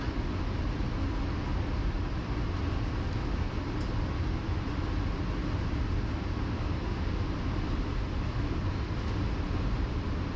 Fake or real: real